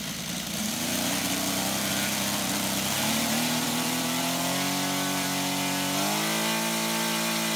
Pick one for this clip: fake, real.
fake